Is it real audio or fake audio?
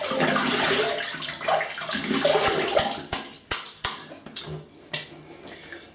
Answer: real